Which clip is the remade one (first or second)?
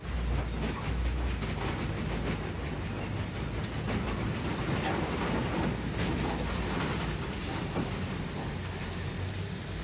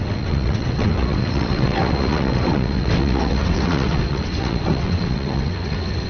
second